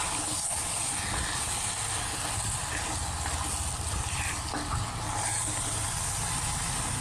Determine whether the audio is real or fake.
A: real